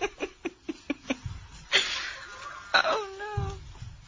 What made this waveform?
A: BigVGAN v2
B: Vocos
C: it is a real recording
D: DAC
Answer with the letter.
C